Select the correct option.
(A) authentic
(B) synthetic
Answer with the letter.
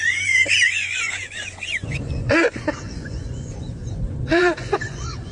B